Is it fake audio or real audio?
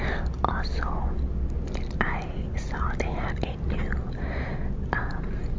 real